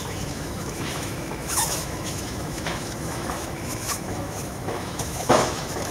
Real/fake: fake